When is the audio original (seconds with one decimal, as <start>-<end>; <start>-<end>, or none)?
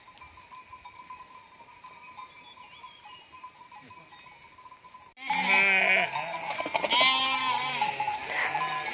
4.3-7.2; 8.2-8.9